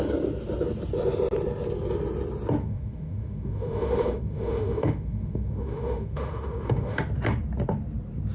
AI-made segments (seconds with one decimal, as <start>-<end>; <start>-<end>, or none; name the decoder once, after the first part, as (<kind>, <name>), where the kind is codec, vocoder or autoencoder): 2.6-7.0 (autoencoder, DAC-VAE)